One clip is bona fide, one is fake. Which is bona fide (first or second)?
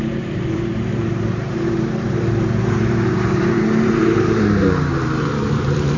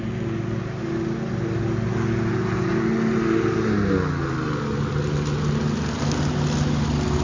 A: second